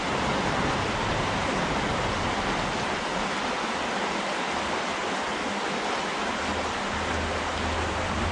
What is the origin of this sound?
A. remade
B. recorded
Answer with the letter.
B